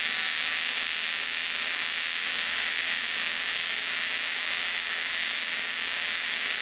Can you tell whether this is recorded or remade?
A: remade